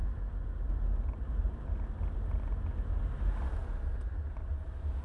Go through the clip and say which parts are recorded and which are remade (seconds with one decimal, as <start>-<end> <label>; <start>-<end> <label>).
0.0-3.0 remade; 3.0-5.0 recorded